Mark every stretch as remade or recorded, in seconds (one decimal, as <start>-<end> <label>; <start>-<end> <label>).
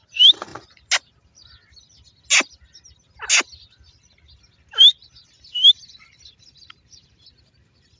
0.0-8.0 recorded